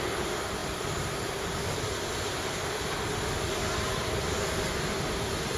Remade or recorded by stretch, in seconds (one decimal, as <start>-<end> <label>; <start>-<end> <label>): 0.0-4.0 recorded; 4.0-4.6 remade; 4.6-5.6 recorded